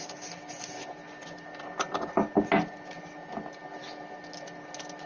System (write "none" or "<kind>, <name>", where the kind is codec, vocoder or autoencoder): none